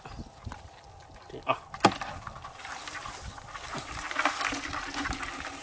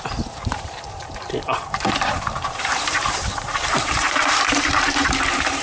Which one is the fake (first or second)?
second